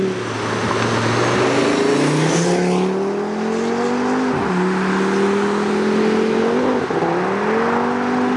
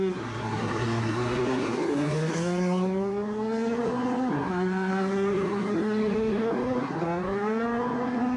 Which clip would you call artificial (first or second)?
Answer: second